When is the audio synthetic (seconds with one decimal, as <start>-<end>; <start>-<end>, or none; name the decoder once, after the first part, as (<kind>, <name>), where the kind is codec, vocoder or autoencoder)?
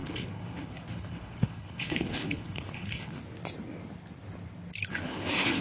0.0-3.2 (codec, HILCodec); 4.9-5.6